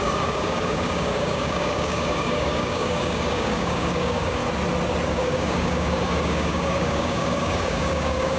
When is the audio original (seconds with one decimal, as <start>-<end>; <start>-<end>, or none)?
4.4-5.1